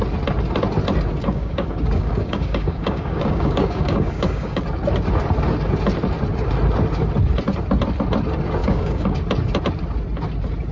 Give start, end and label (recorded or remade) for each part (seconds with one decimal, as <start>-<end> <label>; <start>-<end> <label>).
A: 0.0-1.2 recorded; 1.2-4.6 remade; 4.6-8.6 recorded; 8.6-9.2 remade; 9.2-10.7 recorded